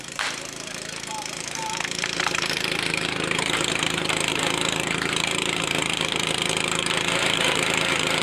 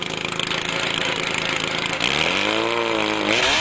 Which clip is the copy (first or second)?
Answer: first